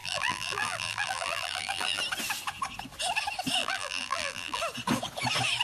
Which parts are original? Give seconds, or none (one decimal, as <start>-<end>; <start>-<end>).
2.0-3.6; 4.6-5.6